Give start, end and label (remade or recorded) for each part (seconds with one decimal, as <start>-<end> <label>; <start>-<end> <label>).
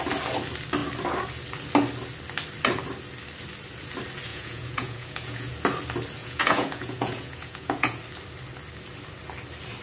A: 0.0-4.3 recorded; 4.3-5.5 remade; 5.5-6.2 recorded; 6.2-8.0 remade; 8.0-9.8 recorded